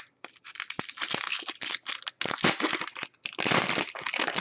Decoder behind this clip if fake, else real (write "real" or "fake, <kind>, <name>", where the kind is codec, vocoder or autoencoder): real